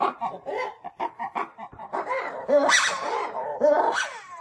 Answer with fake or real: fake